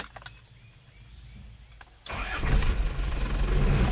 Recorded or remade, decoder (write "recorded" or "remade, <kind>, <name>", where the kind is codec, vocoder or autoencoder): recorded